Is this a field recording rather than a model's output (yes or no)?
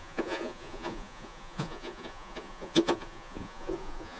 no